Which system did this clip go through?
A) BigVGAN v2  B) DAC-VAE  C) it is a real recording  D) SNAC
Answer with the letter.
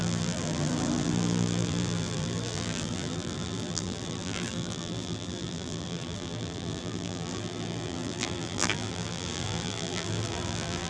A